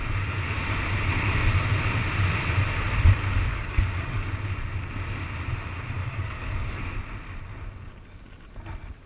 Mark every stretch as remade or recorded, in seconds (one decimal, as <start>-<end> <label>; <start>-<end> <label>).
0.0-3.5 recorded; 3.5-4.3 remade; 4.3-6.0 recorded; 6.0-6.8 remade; 6.8-9.1 recorded